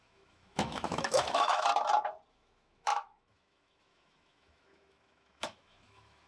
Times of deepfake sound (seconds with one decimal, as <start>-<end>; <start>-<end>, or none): 0.0-1.7; 2.3-6.3